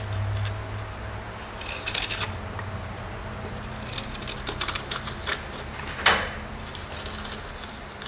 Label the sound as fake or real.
real